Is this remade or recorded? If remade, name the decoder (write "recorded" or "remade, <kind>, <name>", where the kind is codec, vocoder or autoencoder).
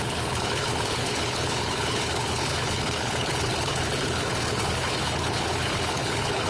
remade, codec, HILCodec